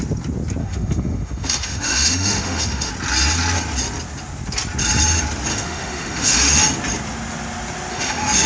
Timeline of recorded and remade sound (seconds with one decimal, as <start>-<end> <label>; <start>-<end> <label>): 0.0-0.6 recorded; 0.6-2.9 remade; 2.9-5.5 recorded; 5.5-6.6 remade; 6.6-7.9 recorded; 7.9-8.5 remade